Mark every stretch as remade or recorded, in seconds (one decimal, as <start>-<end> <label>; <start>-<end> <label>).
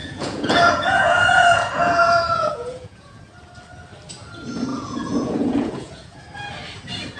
0.0-3.2 remade; 3.2-4.7 recorded; 4.7-6.2 remade; 6.2-7.2 recorded